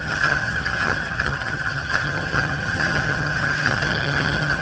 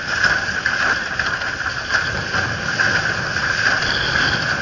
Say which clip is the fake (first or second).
first